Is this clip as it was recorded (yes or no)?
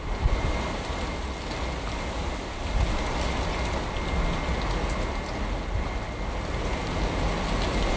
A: yes